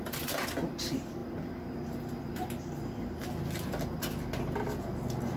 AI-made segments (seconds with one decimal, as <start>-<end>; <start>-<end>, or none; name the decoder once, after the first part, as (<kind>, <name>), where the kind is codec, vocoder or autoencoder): none

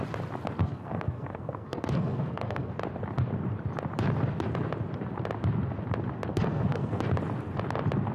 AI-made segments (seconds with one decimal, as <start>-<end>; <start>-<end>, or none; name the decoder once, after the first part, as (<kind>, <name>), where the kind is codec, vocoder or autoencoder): 0.6-2.7 (codec, SNAC); 6.3-7.0

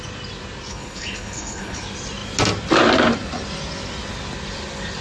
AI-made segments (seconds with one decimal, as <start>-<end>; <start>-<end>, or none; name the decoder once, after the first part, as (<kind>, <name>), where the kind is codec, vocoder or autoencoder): 0.7-1.8 (codec, HILCodec)

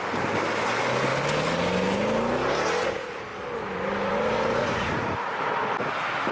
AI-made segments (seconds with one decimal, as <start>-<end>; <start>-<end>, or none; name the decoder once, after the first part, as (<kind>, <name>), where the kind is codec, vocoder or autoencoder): 4.6-5.5 (vocoder, Vocos)